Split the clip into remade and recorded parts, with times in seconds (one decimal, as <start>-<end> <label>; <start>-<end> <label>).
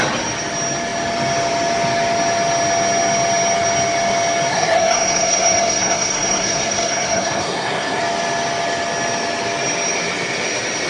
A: 0.0-4.5 recorded; 4.5-8.0 remade; 8.0-10.9 recorded